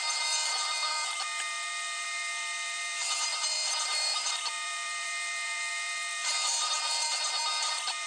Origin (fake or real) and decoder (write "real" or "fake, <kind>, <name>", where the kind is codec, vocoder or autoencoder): fake, vocoder, BigVGAN v2